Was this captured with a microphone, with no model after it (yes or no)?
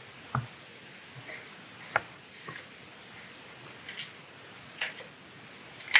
yes